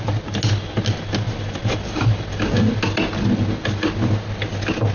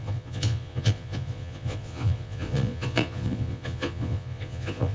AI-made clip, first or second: second